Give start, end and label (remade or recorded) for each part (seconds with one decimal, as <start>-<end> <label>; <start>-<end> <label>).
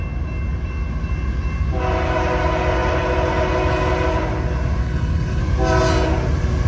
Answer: 0.0-4.8 recorded; 4.8-5.4 remade; 5.4-6.7 recorded